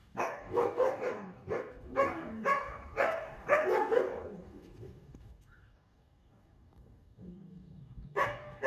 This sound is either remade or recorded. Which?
remade